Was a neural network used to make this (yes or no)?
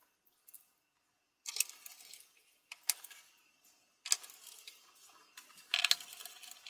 no